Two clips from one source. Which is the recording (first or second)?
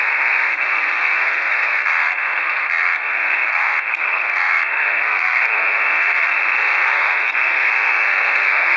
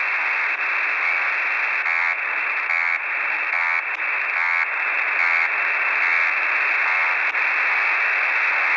second